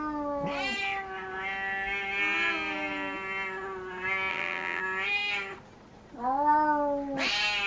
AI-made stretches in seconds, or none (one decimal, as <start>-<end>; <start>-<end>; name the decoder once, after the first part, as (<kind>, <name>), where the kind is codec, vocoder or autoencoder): 4.3-4.8 (vocoder, BigVGAN v2)